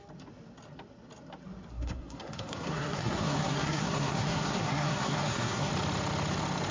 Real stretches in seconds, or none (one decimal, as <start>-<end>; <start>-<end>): 0.0-1.7; 5.7-6.7